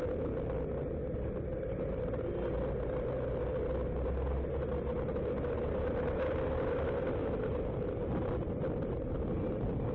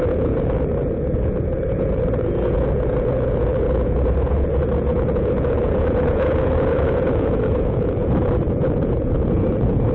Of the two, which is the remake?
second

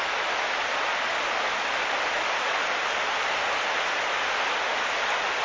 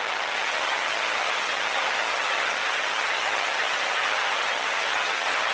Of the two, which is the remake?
second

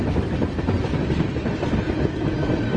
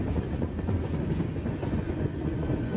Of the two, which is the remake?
second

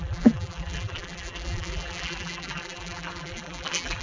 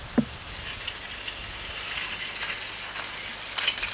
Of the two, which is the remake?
first